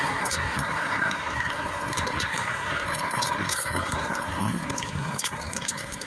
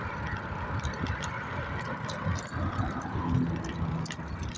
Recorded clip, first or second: second